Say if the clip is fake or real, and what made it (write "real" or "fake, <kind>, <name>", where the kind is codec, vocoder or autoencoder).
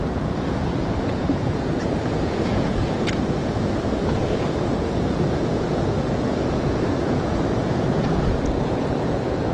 fake, vocoder, Vocos